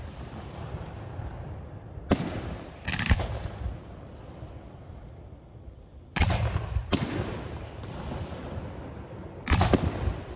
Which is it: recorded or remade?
recorded